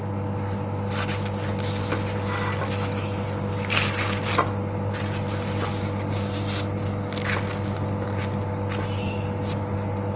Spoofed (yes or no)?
no